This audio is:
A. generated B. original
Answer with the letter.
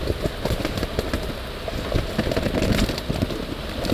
B